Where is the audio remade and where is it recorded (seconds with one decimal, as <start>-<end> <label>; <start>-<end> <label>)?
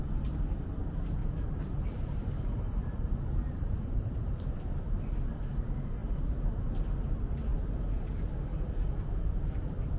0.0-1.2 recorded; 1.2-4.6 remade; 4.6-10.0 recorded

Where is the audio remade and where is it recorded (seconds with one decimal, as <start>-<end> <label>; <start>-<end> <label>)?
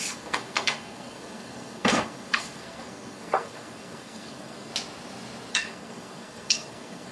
0.0-4.7 remade; 4.7-5.5 recorded; 5.5-7.1 remade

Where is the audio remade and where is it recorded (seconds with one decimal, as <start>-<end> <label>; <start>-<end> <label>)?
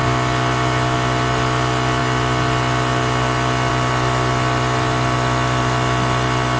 0.0-6.6 recorded